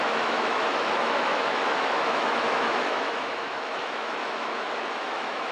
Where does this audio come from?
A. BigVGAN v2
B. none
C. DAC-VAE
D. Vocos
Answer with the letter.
C